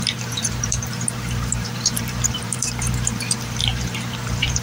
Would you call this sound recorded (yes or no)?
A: no